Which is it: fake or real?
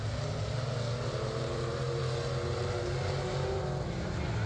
real